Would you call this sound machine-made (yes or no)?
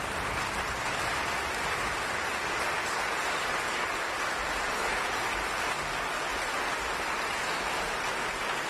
no